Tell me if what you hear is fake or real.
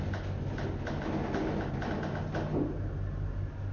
real